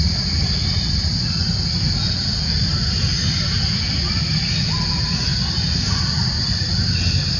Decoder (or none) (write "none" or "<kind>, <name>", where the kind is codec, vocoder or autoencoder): none